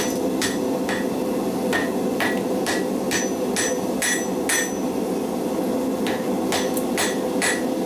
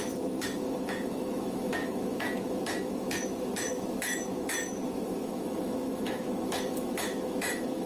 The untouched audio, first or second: first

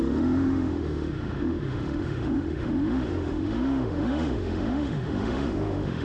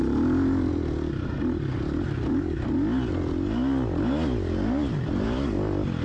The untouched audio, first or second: second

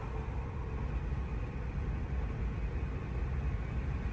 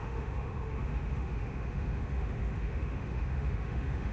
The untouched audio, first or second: first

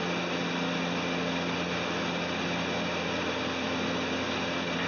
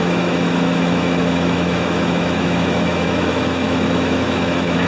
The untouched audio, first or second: first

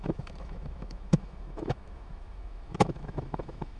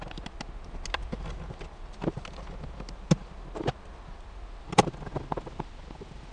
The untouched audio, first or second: second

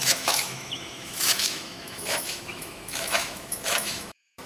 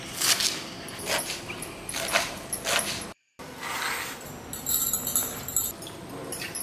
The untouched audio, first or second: second